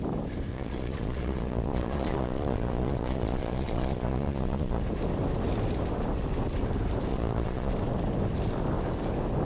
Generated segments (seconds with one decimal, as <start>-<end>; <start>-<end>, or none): 0.5-4.8; 7.1-7.7